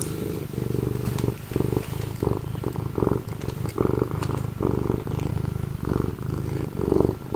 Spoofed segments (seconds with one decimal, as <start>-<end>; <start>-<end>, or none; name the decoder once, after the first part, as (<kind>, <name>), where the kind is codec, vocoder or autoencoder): 5.3-6.1 (autoencoder, DAC-VAE)